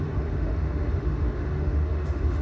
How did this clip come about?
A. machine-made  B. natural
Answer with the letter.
A